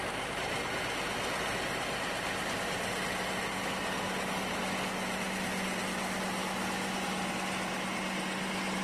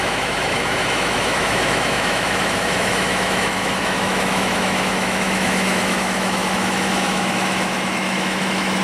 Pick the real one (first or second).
first